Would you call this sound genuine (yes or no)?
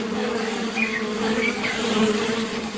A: no